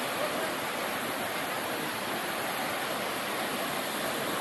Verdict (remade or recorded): recorded